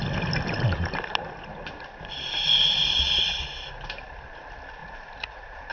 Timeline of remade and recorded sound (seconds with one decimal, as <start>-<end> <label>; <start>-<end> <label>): 0.0-4.8 recorded; 4.8-5.7 remade